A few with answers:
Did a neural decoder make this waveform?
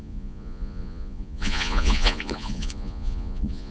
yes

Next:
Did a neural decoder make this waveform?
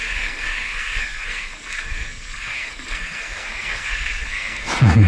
yes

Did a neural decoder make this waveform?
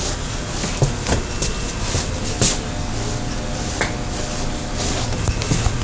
no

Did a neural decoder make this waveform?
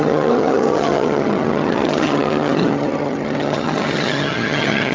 yes